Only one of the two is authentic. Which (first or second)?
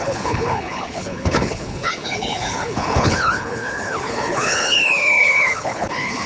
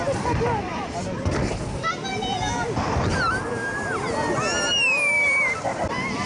second